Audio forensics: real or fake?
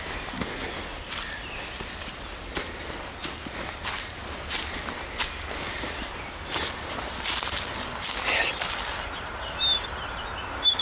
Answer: real